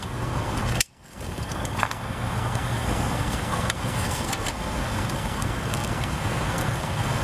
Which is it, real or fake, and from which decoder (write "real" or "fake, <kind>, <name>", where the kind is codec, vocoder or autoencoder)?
fake, codec, SNAC